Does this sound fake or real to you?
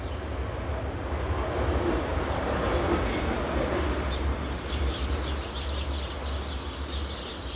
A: real